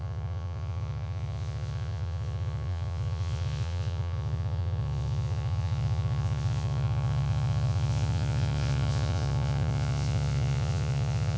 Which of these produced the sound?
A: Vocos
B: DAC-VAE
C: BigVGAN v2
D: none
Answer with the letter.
A